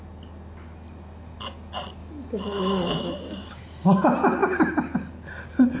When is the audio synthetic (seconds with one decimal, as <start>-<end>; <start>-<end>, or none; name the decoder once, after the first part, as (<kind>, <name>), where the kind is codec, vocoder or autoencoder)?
2.0-3.1 (autoencoder, DAC-VAE)